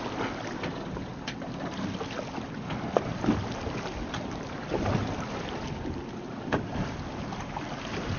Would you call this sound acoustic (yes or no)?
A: yes